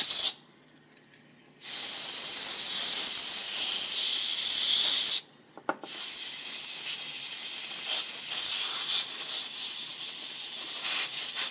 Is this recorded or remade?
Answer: recorded